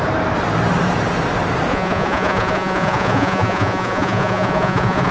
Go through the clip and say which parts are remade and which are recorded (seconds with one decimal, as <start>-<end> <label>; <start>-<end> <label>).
0.0-1.7 recorded; 1.7-5.1 remade

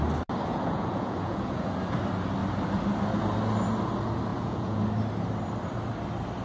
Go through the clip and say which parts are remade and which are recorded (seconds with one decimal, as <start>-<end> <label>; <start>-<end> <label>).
0.0-0.5 recorded; 0.5-1.7 remade; 1.7-4.3 recorded; 4.3-4.8 remade; 4.8-6.4 recorded

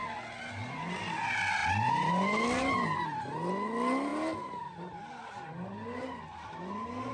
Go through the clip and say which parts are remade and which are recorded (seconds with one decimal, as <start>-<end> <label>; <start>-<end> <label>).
0.0-7.1 recorded

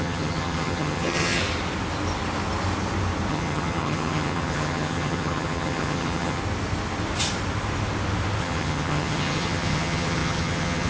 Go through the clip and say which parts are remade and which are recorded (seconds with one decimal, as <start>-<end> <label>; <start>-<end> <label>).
0.0-1.4 remade; 1.4-3.3 recorded; 3.3-6.4 remade; 6.4-8.4 recorded; 8.4-10.9 remade

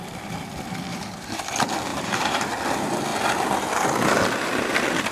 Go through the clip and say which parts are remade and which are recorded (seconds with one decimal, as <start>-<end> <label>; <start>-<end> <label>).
0.0-0.9 recorded; 0.9-1.4 remade; 1.4-1.9 recorded; 1.9-2.5 remade; 2.5-5.1 recorded

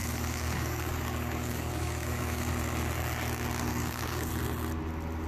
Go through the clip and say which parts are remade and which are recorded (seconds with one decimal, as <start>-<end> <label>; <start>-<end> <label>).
0.0-2.5 remade; 2.5-3.7 recorded; 3.7-4.3 remade; 4.3-5.3 recorded

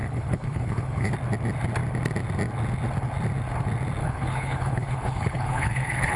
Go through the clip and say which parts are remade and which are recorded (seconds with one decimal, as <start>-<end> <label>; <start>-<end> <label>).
0.0-1.1 remade; 1.1-4.0 recorded; 4.0-6.2 remade